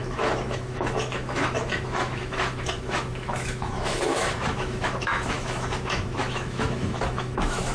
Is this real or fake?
fake